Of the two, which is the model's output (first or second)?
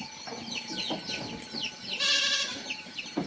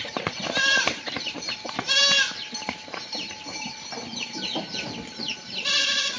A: second